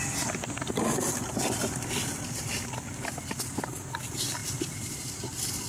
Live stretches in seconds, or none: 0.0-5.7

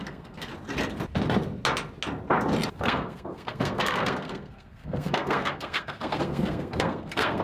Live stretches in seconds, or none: 0.5-2.7

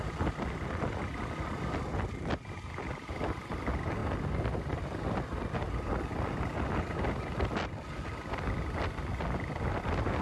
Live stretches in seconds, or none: 0.0-10.2

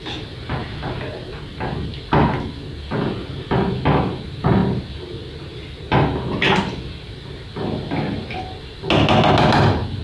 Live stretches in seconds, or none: 0.0-10.0

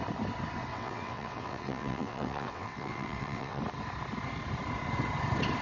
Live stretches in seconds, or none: 0.0-0.7; 3.6-5.6

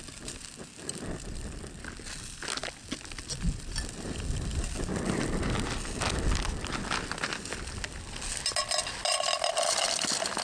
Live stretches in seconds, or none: 0.0-10.4

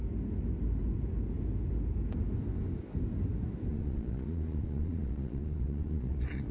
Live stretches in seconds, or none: 0.0-3.7